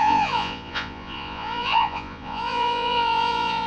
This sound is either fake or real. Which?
fake